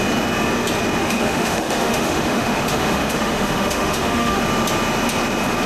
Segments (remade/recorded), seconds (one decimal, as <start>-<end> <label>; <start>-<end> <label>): 0.0-1.0 recorded; 1.0-4.4 remade; 4.4-5.7 recorded